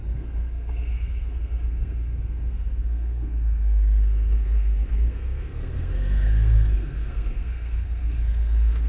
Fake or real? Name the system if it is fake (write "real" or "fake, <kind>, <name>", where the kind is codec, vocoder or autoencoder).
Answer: fake, codec, SNAC